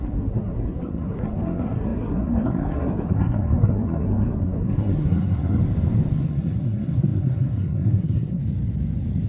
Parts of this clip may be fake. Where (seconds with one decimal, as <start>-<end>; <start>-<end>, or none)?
0.0-5.6; 6.1-8.4